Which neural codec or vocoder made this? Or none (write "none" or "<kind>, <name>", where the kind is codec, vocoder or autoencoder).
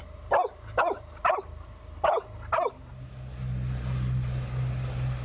none